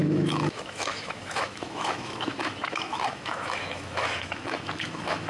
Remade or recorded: remade